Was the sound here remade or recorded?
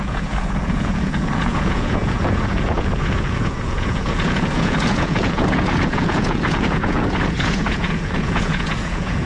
remade